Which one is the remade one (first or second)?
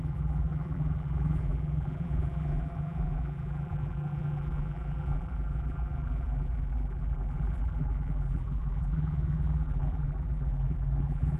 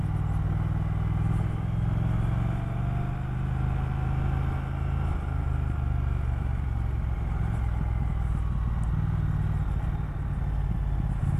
first